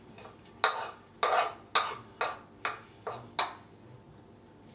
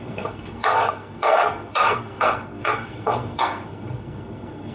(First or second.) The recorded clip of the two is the first